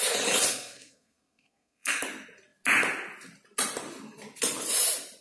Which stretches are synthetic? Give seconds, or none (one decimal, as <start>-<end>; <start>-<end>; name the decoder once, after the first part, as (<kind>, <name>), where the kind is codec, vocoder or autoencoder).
0.5-2.0 (codec, SNAC)